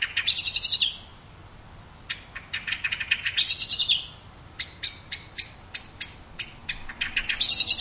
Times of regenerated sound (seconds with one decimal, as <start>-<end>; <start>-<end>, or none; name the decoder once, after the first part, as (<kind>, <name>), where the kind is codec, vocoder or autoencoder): none